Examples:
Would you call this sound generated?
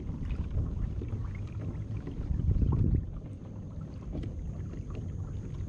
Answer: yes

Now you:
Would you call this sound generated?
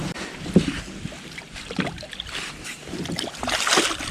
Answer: no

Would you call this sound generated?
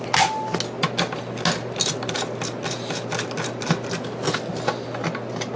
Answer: no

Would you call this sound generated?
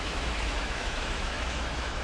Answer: yes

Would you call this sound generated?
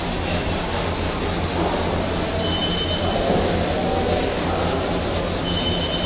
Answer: no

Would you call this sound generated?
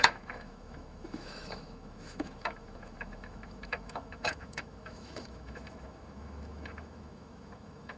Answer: yes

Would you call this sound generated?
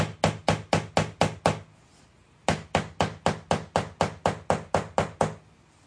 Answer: no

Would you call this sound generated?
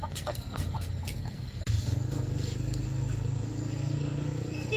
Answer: yes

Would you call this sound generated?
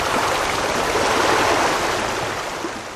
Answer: no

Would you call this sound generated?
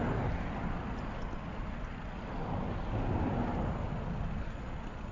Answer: no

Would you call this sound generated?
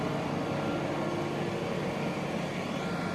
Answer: no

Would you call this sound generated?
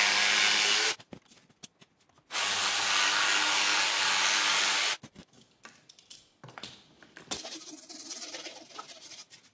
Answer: no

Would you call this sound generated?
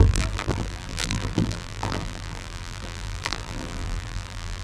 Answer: yes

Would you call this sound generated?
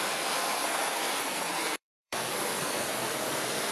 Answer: yes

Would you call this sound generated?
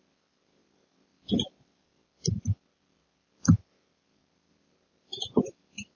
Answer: no